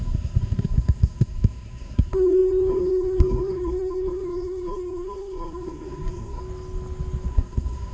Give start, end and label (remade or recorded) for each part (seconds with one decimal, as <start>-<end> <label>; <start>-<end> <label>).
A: 0.0-6.4 remade; 6.4-7.3 recorded; 7.3-7.9 remade

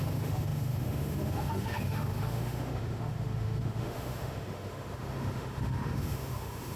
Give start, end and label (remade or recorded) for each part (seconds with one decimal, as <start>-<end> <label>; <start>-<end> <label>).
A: 0.0-6.8 remade

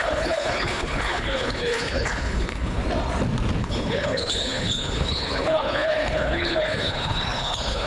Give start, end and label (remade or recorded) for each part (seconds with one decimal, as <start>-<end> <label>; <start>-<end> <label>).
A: 0.0-2.8 remade; 2.8-3.6 recorded; 3.6-7.9 remade

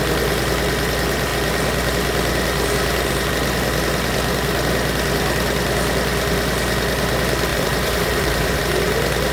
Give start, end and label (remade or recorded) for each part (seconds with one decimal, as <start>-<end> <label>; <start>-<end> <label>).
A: 0.0-7.5 recorded; 7.5-8.6 remade; 8.6-9.3 recorded

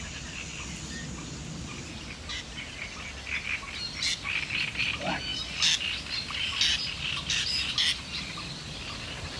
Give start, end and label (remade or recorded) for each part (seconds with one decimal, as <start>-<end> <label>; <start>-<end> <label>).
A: 0.0-9.4 recorded

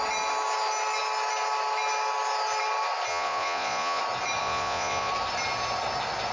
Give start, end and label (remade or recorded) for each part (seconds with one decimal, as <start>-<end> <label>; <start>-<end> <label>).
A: 0.0-3.1 recorded; 3.1-4.0 remade; 4.0-4.4 recorded; 4.4-5.1 remade; 5.1-6.3 recorded